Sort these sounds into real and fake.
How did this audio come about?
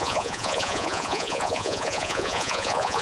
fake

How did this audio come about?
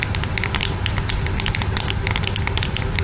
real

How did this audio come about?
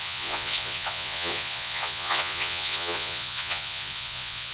fake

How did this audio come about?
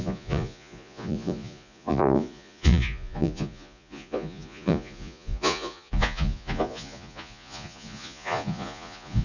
fake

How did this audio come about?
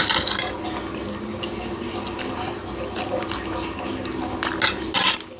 real